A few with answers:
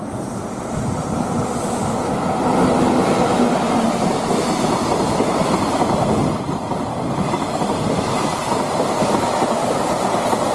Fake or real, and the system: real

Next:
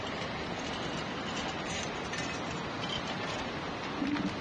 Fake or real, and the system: real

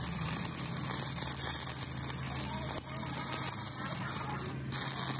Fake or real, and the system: real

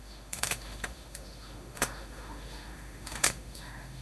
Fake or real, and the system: fake, autoencoder, DAC-VAE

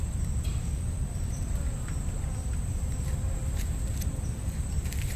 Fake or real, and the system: real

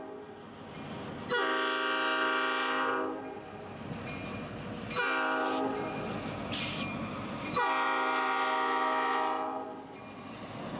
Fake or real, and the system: real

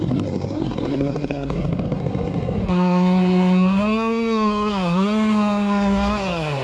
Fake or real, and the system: fake, codec, SNAC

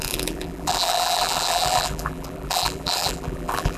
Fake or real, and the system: fake, vocoder, BigVGAN v2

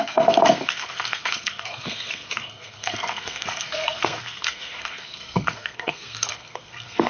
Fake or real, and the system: fake, codec, SNAC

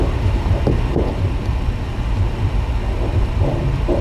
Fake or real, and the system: fake, vocoder, BigVGAN v2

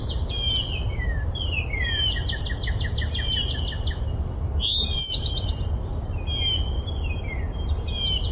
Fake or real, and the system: real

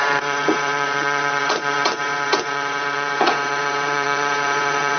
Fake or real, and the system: fake, vocoder, WaveNeXt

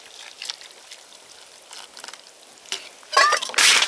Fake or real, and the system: real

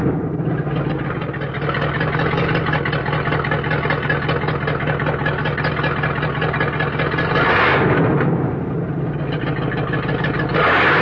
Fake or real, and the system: real